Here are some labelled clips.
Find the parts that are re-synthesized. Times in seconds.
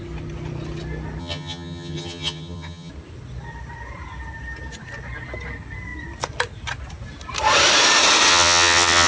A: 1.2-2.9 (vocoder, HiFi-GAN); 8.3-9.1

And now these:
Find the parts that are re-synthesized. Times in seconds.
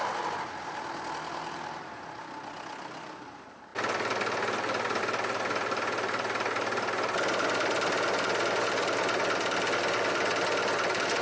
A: none